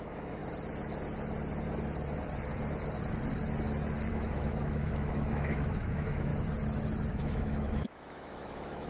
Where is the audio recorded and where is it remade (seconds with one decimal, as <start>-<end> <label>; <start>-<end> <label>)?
0.0-0.4 remade; 0.4-4.1 recorded; 4.1-6.3 remade; 6.3-7.1 recorded; 7.1-8.9 remade